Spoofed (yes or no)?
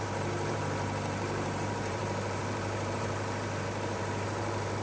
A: yes